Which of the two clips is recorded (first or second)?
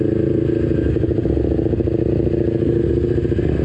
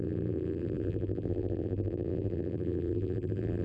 first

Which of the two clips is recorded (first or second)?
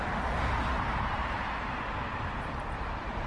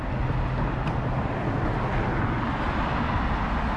second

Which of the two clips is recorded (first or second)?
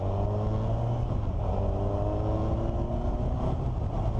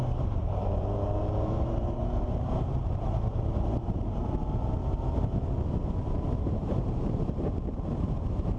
first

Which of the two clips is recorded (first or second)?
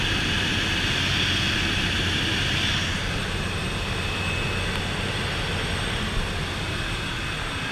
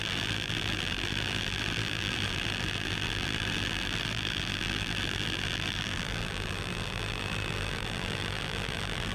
first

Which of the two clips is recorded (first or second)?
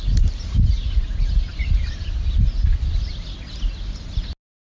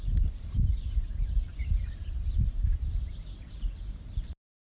first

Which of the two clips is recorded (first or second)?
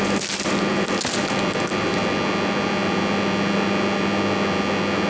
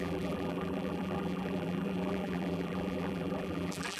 first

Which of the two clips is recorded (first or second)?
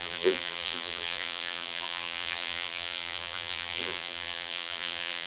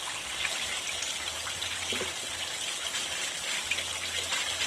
second